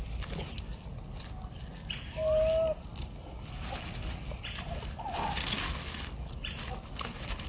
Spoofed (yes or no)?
no